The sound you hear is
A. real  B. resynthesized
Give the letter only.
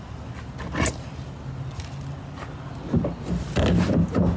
A